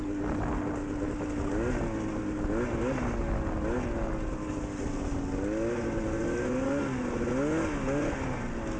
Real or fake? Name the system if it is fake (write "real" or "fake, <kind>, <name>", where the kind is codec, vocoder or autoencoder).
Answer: real